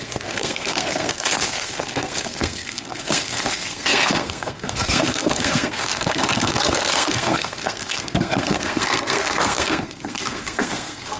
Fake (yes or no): yes